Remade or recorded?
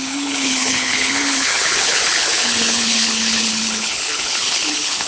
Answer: remade